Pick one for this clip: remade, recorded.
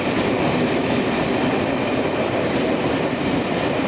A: remade